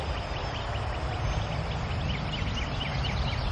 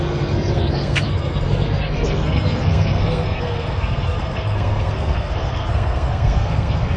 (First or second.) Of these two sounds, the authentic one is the first